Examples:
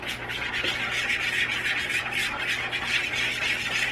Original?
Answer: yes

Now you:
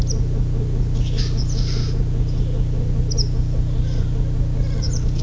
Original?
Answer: yes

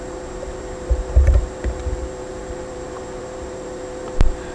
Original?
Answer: no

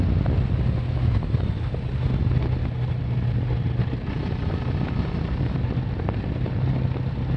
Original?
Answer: yes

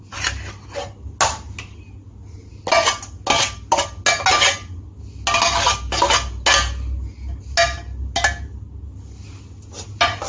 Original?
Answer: yes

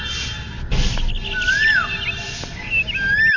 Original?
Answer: yes